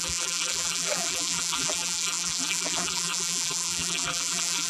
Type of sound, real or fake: fake